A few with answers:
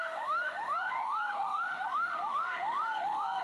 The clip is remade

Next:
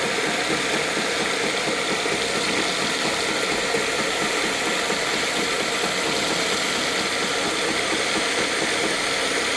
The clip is recorded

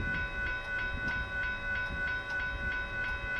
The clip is recorded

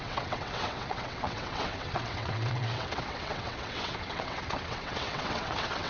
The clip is remade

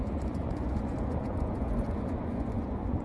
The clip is remade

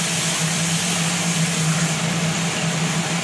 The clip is recorded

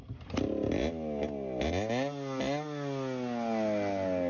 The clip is recorded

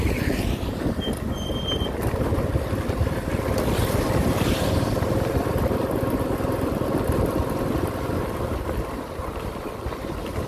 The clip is recorded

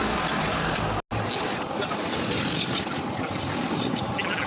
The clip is recorded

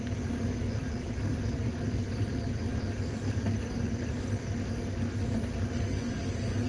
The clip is recorded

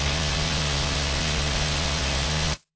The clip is remade